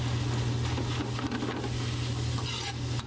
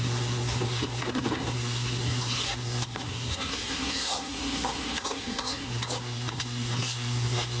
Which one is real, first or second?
first